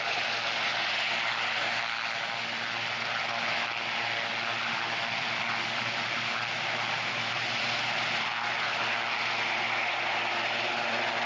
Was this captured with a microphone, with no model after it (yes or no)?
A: yes